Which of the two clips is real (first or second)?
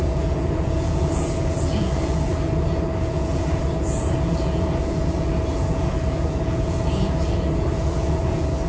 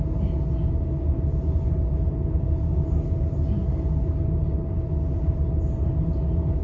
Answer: second